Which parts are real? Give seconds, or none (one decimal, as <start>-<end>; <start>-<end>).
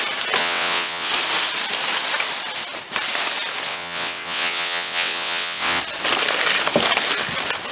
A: 0.0-0.4; 1.1-3.7; 5.8-7.7